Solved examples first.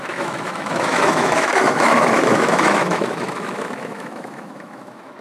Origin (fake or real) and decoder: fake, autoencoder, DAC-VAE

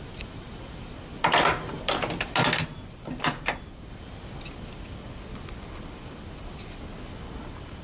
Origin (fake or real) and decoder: real